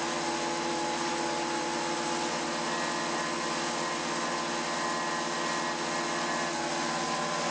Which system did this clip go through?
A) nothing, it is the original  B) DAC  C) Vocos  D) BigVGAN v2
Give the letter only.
A